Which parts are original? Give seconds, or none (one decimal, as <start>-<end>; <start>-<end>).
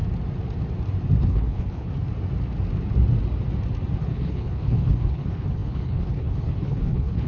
0.0-1.2; 1.9-4.0